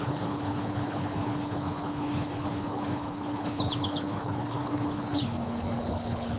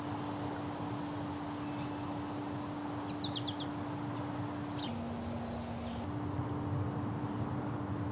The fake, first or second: first